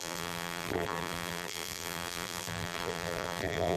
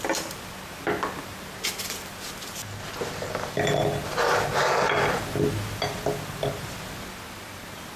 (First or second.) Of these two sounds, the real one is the second